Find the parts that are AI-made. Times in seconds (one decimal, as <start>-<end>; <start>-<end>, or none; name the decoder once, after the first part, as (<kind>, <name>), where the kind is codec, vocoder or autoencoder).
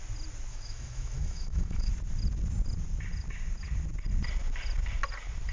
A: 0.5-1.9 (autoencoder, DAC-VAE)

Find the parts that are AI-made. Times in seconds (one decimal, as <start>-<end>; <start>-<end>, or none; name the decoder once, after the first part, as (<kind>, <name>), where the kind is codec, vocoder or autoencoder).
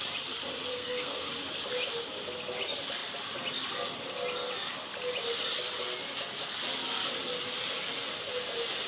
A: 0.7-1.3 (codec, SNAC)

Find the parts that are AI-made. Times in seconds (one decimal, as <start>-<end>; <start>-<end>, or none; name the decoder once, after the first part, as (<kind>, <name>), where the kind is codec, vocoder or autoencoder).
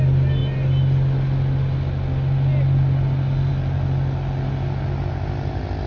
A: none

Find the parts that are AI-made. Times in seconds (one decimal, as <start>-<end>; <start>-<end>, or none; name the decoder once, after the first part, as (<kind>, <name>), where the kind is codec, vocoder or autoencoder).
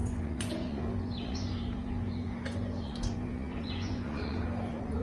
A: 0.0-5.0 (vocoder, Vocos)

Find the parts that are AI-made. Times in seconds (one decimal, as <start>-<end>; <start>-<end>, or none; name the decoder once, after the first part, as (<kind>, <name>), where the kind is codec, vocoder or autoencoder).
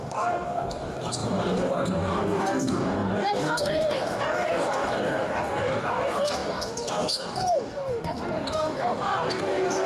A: 0.0-9.9 (codec, DAC)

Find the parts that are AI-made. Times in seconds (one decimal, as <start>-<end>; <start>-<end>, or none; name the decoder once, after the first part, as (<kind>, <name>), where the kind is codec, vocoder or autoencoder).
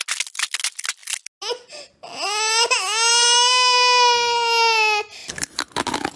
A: none